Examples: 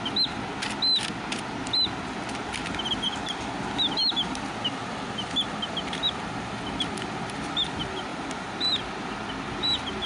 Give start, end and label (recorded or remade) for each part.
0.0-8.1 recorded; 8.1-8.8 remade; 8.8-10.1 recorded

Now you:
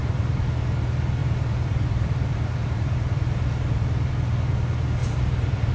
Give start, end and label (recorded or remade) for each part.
0.0-0.5 remade; 0.5-1.2 recorded; 1.2-4.1 remade; 4.1-5.0 recorded; 5.0-5.7 remade

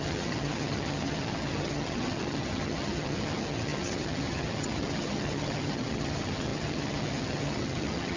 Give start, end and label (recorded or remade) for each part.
0.0-8.2 remade

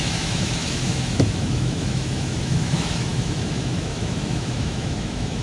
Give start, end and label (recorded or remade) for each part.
0.0-5.4 remade

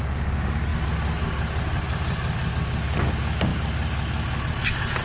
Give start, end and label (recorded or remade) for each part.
0.0-5.0 recorded

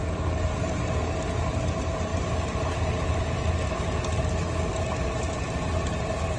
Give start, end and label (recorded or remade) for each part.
0.0-6.4 recorded

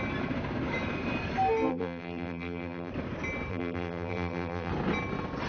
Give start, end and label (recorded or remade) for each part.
0.0-1.7 recorded; 1.7-2.9 remade; 2.9-3.5 recorded; 3.5-4.7 remade; 4.7-5.5 recorded

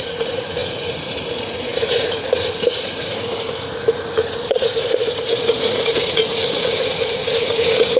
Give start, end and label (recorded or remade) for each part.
0.0-8.0 remade